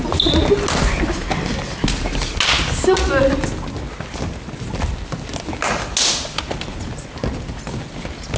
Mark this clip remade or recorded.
recorded